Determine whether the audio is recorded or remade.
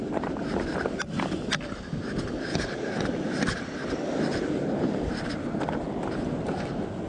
recorded